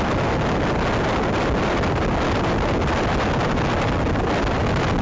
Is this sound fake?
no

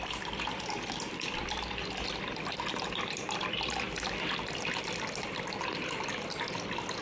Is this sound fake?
no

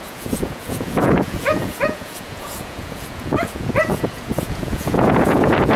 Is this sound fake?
yes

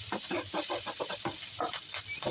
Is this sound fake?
no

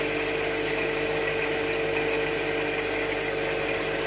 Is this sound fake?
no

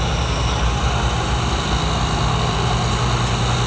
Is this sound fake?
no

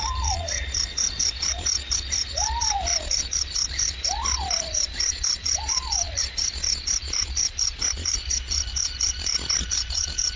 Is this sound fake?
yes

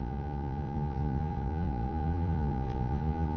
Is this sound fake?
yes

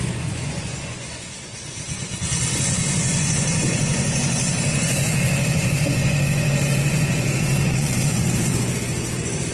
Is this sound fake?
yes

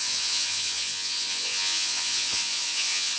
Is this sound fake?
yes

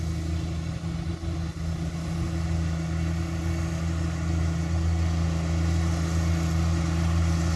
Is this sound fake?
no